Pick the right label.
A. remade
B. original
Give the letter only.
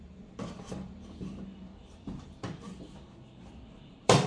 A